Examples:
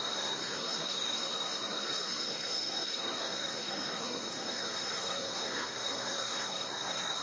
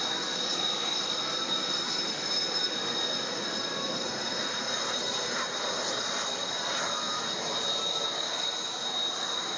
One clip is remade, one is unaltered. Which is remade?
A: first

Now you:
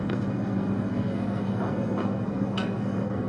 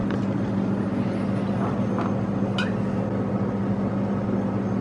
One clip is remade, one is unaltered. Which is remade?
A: first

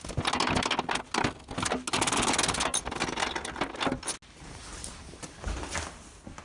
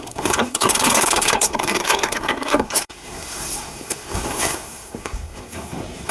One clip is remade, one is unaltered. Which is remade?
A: second